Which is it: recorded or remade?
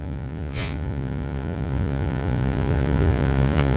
remade